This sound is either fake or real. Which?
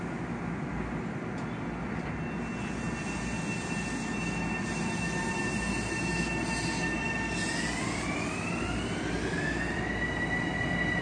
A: real